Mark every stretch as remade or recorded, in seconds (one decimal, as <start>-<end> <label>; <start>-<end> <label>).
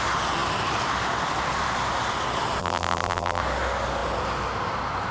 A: 0.0-2.6 recorded; 2.6-3.4 remade; 3.4-5.1 recorded